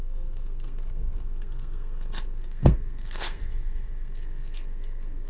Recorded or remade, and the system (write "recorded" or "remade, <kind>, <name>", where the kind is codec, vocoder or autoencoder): remade, codec, SNAC